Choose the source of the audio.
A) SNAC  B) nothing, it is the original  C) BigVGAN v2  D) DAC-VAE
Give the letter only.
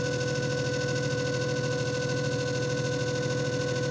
B